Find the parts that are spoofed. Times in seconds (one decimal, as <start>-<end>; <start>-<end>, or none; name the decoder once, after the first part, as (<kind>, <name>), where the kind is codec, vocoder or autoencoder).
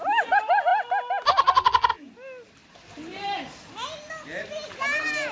none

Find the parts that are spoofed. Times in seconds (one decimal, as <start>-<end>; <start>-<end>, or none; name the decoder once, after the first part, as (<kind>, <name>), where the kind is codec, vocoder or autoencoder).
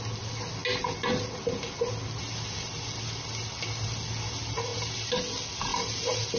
none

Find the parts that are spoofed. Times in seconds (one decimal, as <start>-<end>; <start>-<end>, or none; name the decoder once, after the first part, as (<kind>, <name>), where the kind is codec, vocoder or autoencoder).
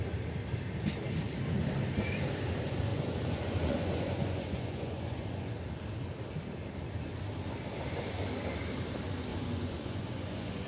2.9-5.5 (vocoder, Vocos); 9.3-10.7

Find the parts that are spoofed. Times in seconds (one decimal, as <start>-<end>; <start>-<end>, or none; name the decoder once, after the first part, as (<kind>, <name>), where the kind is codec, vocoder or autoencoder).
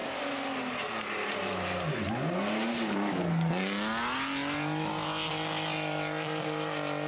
none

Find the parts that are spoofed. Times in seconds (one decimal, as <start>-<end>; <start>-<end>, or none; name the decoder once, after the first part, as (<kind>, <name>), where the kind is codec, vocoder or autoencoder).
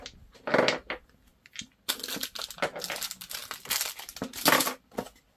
none